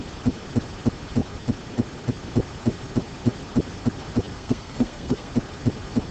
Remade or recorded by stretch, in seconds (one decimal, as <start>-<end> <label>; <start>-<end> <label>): 0.0-4.3 recorded; 4.3-5.3 remade; 5.3-6.1 recorded